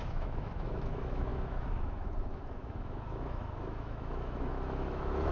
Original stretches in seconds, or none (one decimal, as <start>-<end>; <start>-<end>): none